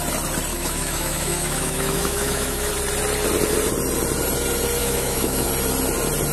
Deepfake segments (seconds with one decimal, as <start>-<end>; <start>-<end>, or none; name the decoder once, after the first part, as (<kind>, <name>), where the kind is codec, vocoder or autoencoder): 0.5-2.7 (autoencoder, DAC-VAE); 4.8-5.5